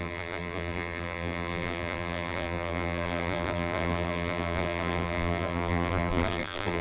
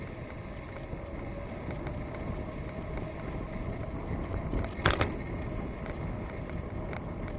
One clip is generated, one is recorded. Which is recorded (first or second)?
second